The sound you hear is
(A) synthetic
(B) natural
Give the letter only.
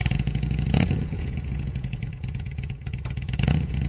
A